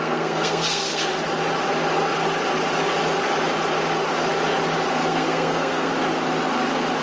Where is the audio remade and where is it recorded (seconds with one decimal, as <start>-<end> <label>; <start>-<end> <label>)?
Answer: 0.0-1.1 remade; 1.1-5.1 recorded; 5.1-5.9 remade; 5.9-7.0 recorded

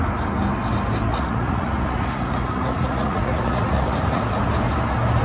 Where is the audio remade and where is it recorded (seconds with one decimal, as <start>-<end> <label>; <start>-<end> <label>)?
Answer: 0.0-1.1 recorded; 1.1-4.2 remade; 4.2-5.2 recorded

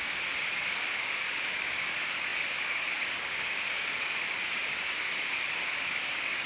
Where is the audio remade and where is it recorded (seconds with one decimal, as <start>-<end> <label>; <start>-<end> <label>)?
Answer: 0.0-6.5 remade

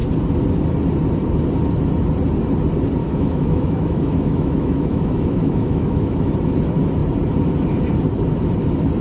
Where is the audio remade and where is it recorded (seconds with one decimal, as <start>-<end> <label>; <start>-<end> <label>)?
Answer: 0.0-3.0 recorded; 3.0-6.3 remade; 6.3-9.0 recorded

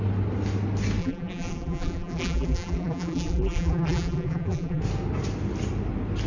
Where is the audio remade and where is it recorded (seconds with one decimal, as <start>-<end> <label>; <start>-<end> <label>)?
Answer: 0.0-1.0 recorded; 1.0-4.8 remade; 4.8-6.3 recorded

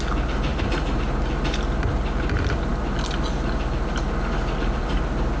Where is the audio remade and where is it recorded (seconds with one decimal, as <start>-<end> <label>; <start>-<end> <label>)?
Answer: 0.0-0.5 recorded; 0.5-1.2 remade; 1.2-5.4 recorded

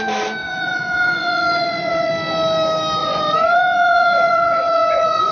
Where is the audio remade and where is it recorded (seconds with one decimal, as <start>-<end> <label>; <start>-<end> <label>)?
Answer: 0.0-0.4 recorded; 0.4-2.1 remade; 2.1-3.0 recorded; 3.0-5.3 remade